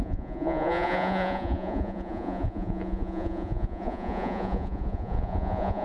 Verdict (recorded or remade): remade